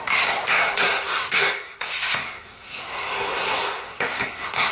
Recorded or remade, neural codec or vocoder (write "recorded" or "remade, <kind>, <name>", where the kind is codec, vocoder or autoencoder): remade, codec, SNAC